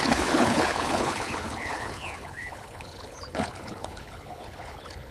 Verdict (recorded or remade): remade